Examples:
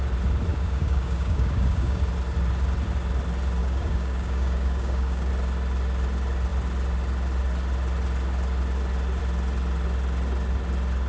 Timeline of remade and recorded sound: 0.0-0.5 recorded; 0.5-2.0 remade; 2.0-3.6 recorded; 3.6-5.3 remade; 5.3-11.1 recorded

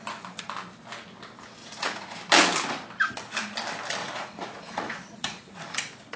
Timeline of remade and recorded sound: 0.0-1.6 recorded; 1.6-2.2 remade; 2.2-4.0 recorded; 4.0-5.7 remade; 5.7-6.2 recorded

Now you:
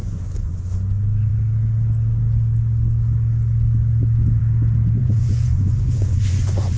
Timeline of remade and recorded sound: 0.0-0.5 remade; 0.5-5.0 recorded; 5.0-6.8 remade